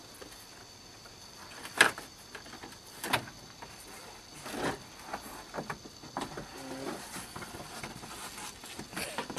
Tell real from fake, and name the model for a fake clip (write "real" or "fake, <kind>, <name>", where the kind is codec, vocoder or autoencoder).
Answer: real